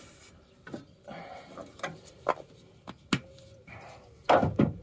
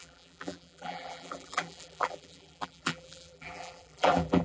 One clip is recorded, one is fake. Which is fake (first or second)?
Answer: second